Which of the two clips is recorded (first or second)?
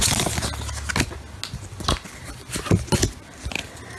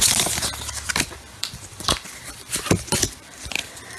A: first